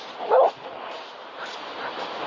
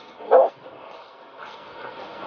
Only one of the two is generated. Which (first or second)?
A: second